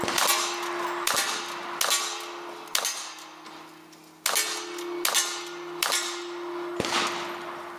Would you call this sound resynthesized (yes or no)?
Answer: no